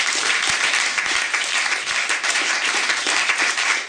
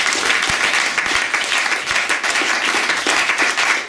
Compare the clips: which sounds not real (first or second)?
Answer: first